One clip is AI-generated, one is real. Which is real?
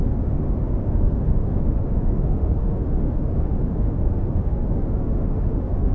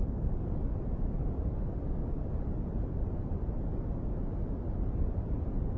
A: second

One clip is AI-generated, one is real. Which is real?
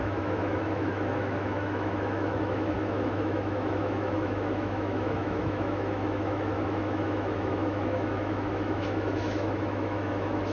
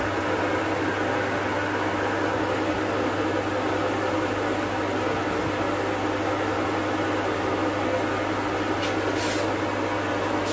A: second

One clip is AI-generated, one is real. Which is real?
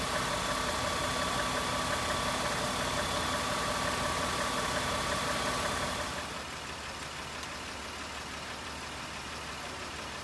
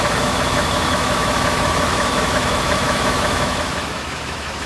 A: first